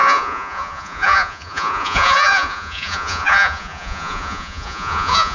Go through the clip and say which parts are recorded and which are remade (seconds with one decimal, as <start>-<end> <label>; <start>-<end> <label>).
0.0-5.3 remade